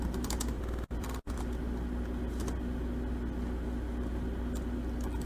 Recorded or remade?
recorded